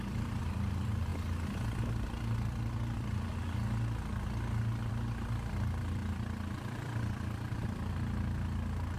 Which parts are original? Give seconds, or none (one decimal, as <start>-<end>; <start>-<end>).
1.1-4.9